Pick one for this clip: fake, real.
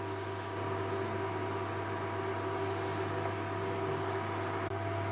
real